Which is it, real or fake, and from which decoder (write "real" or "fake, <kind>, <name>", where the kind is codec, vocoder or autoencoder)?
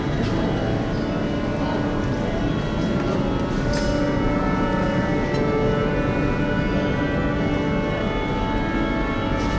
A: real